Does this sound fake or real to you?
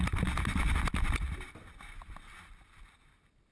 real